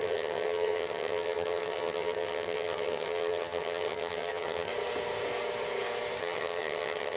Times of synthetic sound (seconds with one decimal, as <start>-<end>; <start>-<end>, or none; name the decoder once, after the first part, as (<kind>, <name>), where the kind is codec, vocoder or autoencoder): 0.0-4.7 (vocoder, HiFi-GAN); 6.2-7.2